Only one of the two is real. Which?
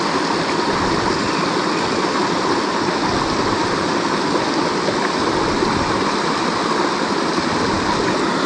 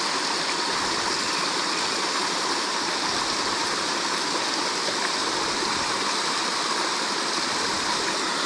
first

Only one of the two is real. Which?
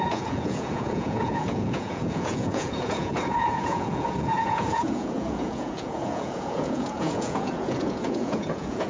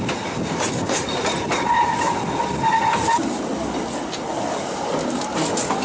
second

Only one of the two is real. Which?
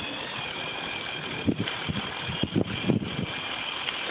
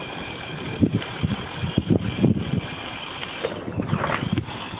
first